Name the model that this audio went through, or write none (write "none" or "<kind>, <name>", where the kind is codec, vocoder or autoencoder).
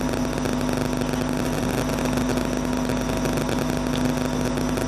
none